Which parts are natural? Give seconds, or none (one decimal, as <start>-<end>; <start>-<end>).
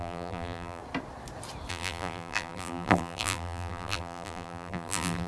0.8-1.7